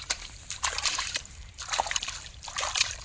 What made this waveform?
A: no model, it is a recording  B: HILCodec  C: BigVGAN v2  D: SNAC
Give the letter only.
C